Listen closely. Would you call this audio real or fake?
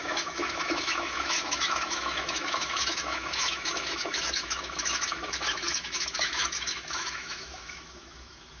fake